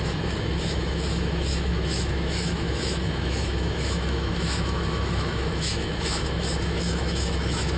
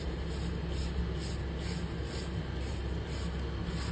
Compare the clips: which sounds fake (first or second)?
first